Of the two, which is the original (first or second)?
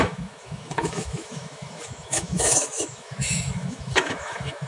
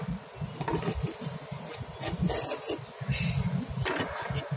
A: second